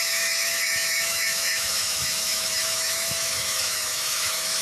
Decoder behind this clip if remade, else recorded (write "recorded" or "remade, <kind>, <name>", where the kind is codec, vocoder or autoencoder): remade, autoencoder, DAC-VAE